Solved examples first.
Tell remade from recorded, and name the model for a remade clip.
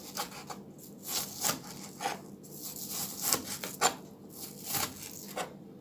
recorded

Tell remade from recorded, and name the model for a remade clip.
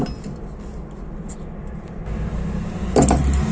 recorded